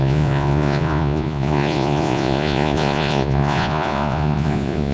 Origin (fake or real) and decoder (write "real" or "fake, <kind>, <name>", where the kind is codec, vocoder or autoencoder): fake, vocoder, Vocos